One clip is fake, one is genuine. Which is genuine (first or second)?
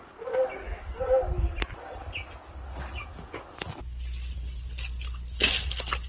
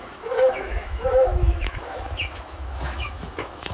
first